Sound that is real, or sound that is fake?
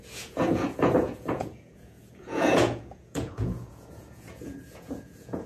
fake